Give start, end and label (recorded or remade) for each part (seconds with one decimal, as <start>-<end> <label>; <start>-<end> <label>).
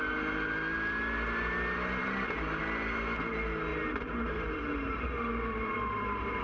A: 0.0-2.0 recorded; 2.0-2.6 remade; 2.6-3.7 recorded; 3.7-6.4 remade